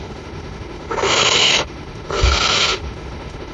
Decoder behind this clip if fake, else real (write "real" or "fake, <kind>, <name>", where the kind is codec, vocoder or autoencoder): fake, autoencoder, DAC-VAE